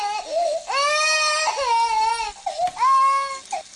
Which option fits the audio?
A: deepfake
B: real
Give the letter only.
B